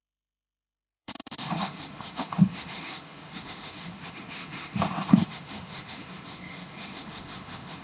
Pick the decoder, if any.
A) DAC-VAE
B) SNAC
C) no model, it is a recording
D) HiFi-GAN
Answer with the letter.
A